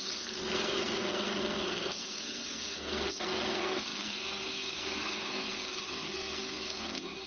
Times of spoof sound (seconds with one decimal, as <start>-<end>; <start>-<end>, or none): 0.0-7.3